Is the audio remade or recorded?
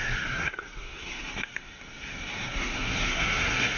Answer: remade